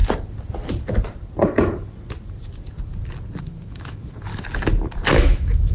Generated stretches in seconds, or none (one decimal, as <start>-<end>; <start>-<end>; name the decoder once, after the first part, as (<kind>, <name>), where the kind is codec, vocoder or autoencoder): 3.4-4.3 (autoencoder, DAC-VAE); 5.2-5.7